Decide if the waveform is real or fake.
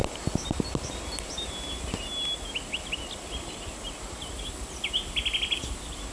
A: real